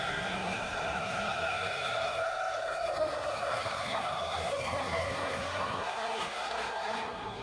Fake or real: fake